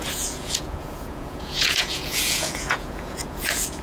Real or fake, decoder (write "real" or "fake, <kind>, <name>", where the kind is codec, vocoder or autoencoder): fake, vocoder, Vocos